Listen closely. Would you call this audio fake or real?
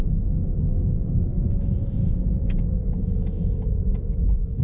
fake